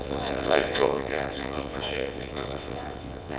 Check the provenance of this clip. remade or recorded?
remade